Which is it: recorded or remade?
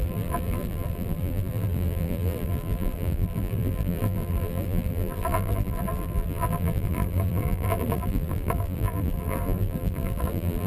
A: remade